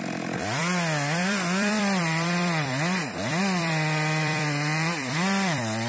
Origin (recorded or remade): remade